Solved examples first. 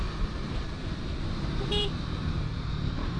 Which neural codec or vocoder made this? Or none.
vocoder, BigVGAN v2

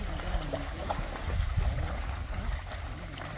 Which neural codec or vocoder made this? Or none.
vocoder, BigVGAN v2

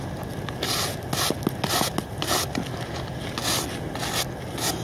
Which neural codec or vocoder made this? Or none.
none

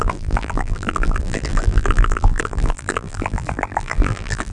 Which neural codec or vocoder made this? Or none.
vocoder, BigVGAN v2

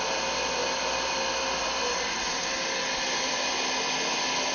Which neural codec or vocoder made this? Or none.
none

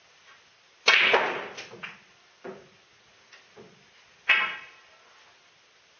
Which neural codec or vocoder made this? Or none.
none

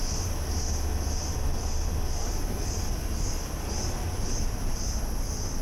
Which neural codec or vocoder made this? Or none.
none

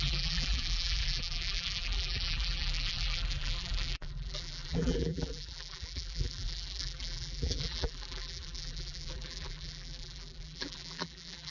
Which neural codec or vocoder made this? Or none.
vocoder, BigVGAN v2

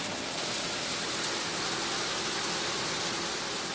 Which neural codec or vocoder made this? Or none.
none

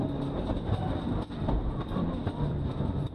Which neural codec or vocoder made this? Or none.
vocoder, BigVGAN v2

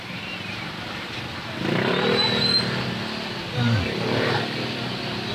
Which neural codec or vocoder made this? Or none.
none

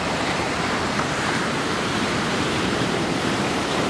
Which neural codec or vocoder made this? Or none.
vocoder, BigVGAN v2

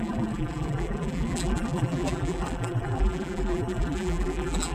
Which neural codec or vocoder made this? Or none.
vocoder, BigVGAN v2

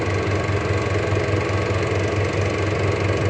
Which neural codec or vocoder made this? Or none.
none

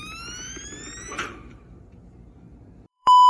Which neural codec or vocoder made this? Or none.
vocoder, BigVGAN v2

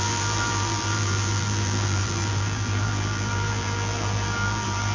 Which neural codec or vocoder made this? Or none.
vocoder, BigVGAN v2